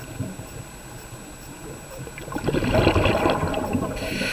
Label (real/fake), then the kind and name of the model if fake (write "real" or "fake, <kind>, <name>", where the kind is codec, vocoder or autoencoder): real